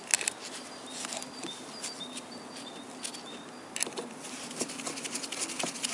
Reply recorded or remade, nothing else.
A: recorded